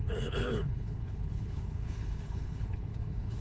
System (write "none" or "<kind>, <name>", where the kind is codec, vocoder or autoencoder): codec, HILCodec